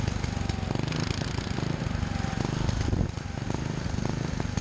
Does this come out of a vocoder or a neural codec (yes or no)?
no